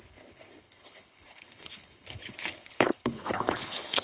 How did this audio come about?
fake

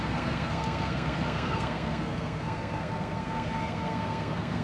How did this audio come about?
fake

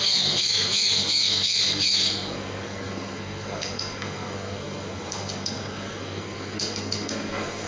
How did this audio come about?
fake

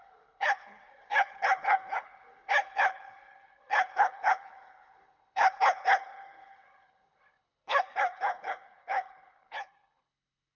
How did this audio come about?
fake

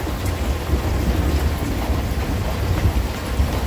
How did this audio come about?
real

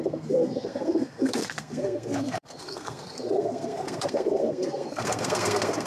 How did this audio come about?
fake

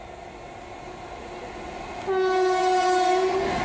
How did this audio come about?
real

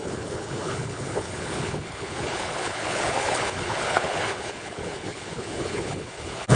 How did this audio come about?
fake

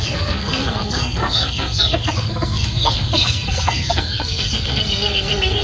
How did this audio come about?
fake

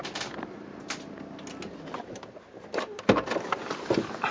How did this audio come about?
real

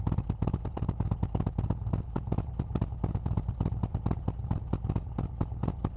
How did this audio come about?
fake